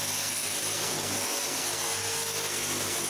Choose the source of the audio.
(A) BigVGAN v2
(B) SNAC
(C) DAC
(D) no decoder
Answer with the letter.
B